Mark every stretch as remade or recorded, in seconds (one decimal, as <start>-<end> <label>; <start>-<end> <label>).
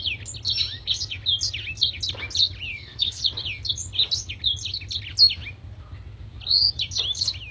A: 0.0-2.7 recorded; 2.7-3.2 remade; 3.2-7.5 recorded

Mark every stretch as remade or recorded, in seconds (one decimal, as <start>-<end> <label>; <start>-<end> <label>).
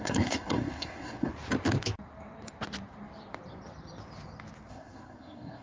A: 0.0-1.3 remade; 1.3-4.7 recorded; 4.7-5.6 remade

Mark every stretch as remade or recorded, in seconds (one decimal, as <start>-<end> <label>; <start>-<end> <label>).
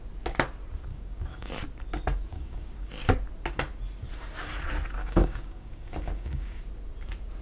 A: 0.0-0.9 recorded; 0.9-1.5 remade; 1.5-2.3 recorded; 2.3-2.9 remade; 2.9-5.0 recorded; 5.0-6.6 remade; 6.6-7.4 recorded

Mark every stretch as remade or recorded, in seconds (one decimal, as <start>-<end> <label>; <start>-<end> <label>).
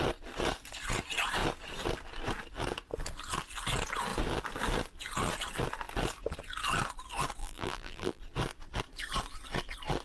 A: 0.0-7.4 recorded; 7.4-8.2 remade; 8.2-10.0 recorded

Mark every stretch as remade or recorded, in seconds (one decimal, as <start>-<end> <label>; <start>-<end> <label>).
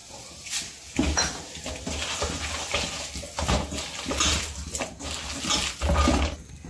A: 0.0-6.7 recorded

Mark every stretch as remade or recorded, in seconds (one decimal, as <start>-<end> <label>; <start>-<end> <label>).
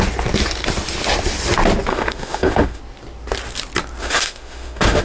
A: 0.0-1.9 recorded; 1.9-2.8 remade; 2.8-4.0 recorded; 4.0-5.0 remade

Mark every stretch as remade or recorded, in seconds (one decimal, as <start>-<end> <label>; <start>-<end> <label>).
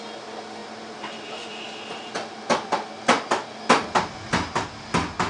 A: 0.0-0.6 recorded; 0.6-1.5 remade; 1.5-5.3 recorded